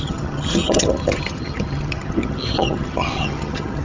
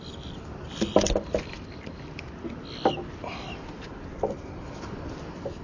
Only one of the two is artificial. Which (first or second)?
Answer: first